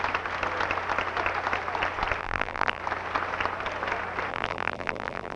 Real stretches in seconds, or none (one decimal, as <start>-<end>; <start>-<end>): 0.0-2.2; 2.8-4.3